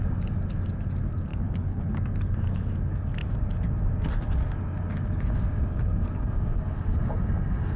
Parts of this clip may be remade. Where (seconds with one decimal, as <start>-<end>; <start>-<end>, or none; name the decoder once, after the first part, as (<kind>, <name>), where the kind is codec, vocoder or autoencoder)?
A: 1.3-1.9 (codec, HILCodec)